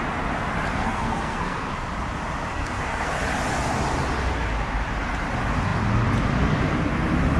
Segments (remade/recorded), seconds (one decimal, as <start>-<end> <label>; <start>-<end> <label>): 0.0-0.7 recorded; 0.7-1.7 remade; 1.7-2.5 recorded; 2.5-3.1 remade; 3.1-7.4 recorded